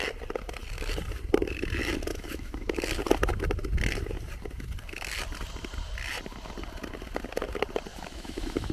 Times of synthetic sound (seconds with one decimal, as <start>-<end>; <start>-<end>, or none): 2.1-2.8; 7.9-8.7